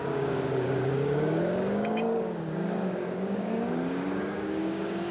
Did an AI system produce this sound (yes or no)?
yes